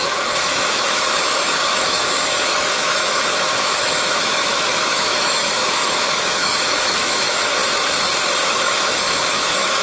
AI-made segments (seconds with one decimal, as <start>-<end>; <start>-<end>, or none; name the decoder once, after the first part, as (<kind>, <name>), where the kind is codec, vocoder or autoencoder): 0.0-7.6 (autoencoder, DAC-VAE); 8.4-9.8